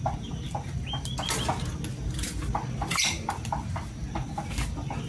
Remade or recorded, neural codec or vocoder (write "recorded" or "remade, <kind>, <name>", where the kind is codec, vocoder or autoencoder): recorded